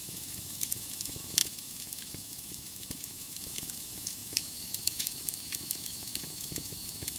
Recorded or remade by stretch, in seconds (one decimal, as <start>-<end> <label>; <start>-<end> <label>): 0.0-7.2 remade